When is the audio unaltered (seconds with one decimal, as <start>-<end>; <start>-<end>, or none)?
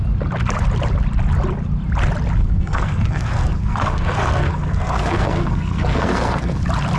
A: 0.0-2.4; 6.6-7.0